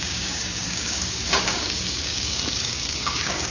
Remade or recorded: remade